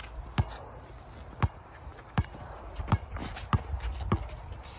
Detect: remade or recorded recorded